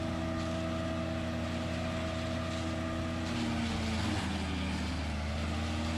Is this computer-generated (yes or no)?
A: no